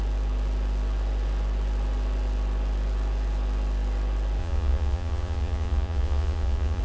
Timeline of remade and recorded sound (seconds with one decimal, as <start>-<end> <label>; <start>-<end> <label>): 0.0-4.4 recorded; 4.4-6.8 remade